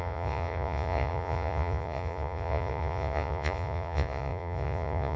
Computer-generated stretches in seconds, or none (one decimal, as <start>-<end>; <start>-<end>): 0.0-5.2